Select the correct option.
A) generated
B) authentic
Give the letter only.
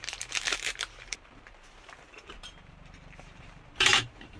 A